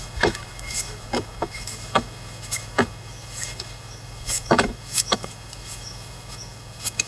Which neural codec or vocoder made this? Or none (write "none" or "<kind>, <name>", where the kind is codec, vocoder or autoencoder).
autoencoder, DAC-VAE